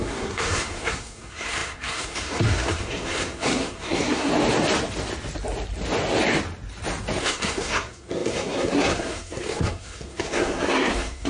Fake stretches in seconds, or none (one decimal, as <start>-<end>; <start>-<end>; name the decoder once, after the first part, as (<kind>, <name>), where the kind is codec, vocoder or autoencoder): 0.0-4.3 (codec, SNAC); 7.2-11.3